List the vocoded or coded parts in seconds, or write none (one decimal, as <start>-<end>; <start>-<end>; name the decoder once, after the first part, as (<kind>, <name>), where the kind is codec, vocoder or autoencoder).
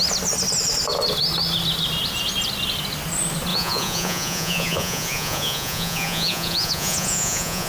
3.5-7.7 (vocoder, Vocos)